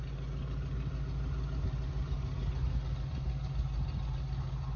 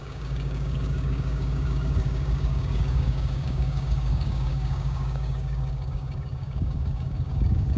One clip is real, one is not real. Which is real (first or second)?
first